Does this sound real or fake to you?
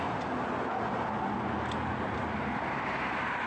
real